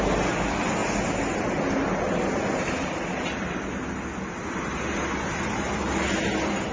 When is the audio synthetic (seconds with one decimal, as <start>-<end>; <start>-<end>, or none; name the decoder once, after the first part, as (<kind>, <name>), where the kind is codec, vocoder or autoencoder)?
none